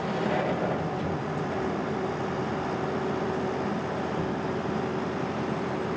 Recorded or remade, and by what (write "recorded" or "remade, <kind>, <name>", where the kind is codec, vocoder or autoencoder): recorded